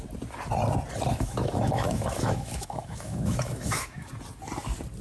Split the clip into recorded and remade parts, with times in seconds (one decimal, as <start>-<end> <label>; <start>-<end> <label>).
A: 0.0-1.1 recorded; 1.1-4.1 remade; 4.1-5.0 recorded